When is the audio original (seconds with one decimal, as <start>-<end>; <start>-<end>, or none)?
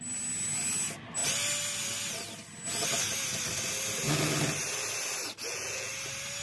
0.0-5.4; 5.9-6.4